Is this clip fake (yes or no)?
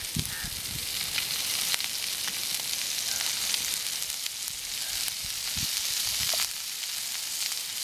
no